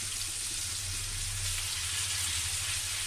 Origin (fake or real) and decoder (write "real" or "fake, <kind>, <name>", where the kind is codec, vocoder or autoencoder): real